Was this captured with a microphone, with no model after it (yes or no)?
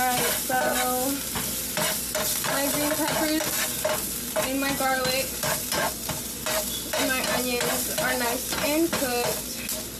yes